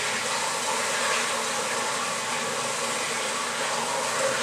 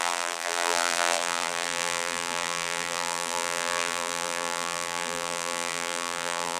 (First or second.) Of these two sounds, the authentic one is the first